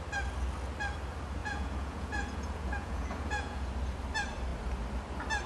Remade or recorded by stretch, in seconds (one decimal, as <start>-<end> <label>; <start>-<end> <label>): 0.0-1.4 recorded; 1.4-3.7 remade; 3.7-5.5 recorded